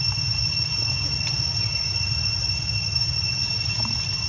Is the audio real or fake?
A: real